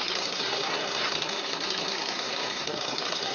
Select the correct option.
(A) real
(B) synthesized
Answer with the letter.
B